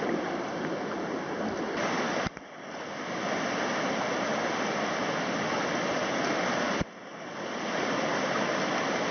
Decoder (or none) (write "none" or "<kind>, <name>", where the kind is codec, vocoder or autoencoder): none